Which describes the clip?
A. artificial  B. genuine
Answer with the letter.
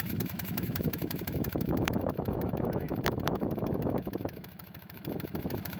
A